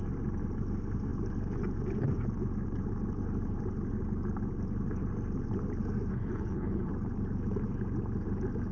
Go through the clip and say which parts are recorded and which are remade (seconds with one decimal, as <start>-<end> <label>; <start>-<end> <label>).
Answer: 0.0-6.1 recorded; 6.1-6.9 remade; 6.9-8.7 recorded